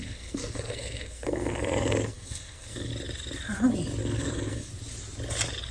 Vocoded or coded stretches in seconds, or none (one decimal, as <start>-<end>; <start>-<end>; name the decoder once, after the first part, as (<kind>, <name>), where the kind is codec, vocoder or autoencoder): 0.0-2.9 (codec, SNAC); 4.0-4.7